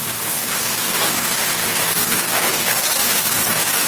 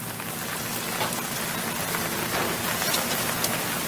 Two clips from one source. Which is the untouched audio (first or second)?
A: second